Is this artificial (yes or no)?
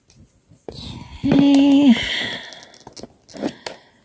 no